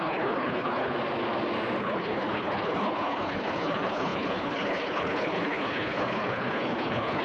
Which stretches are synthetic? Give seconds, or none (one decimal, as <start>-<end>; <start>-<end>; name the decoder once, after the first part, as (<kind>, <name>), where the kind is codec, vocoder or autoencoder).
0.0-0.9 (codec, HILCodec); 1.8-7.2